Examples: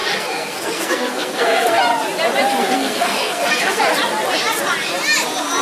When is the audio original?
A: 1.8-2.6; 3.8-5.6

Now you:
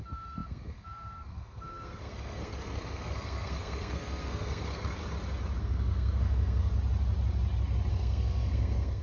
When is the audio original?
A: 5.0-5.6; 6.7-7.9

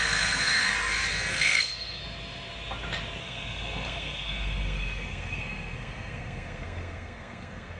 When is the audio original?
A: 0.7-1.3; 2.0-3.2